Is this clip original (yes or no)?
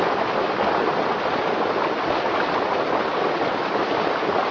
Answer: yes